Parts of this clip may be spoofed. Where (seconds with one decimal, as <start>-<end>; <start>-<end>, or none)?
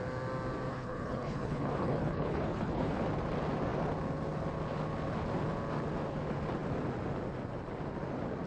0.7-3.0